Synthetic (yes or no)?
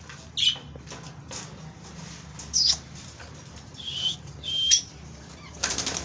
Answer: no